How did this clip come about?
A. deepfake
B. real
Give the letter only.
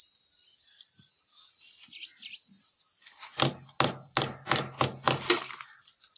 B